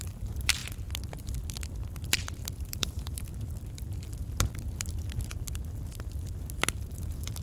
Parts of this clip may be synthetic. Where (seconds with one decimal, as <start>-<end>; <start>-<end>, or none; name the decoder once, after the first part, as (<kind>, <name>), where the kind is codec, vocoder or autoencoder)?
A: 0.0-0.6 (vocoder, BigVGAN v2); 2.6-3.3; 6.8-7.4

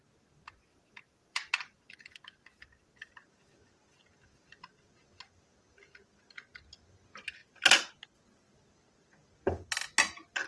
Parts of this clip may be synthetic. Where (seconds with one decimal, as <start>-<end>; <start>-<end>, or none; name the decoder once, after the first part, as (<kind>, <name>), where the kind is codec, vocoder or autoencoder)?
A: 0.7-1.5 (vocoder, BigVGAN v2)

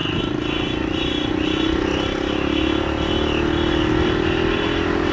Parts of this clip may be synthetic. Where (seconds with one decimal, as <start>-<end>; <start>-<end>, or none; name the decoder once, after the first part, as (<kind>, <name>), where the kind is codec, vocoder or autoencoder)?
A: none